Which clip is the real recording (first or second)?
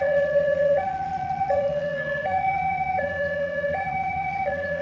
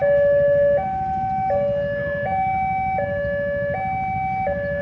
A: second